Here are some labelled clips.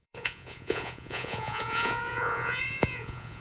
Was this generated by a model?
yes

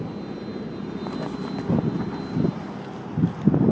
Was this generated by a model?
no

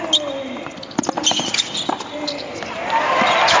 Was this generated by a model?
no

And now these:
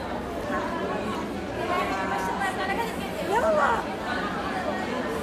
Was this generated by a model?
no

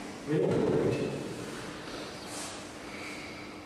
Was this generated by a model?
no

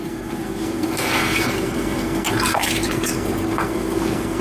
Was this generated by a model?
yes